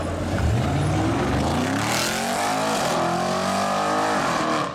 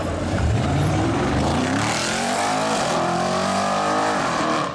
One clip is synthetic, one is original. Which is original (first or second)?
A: first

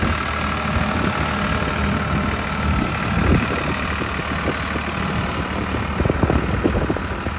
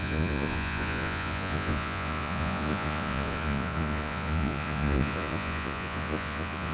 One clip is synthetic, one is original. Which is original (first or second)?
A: first